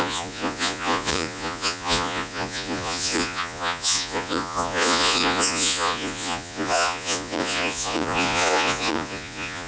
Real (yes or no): no